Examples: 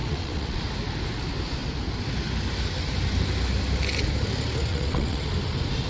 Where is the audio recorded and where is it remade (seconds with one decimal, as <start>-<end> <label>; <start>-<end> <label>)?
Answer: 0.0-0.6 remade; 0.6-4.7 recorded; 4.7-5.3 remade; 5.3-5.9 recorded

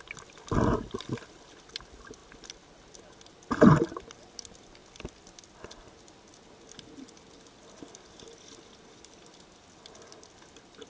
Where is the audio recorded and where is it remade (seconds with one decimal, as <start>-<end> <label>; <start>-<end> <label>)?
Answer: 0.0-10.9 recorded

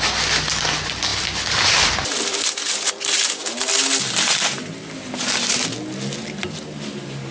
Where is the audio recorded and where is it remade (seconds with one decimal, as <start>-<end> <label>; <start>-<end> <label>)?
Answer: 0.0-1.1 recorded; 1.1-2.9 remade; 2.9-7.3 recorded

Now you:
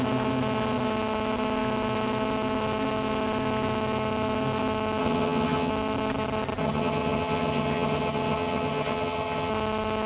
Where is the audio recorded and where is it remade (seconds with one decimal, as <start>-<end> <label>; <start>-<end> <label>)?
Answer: 0.0-5.0 recorded; 5.0-5.7 remade; 5.7-6.6 recorded; 6.6-9.5 remade; 9.5-10.1 recorded